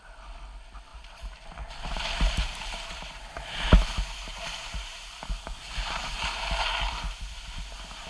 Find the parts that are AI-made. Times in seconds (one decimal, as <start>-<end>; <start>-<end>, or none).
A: 0.9-3.2; 4.3-6.0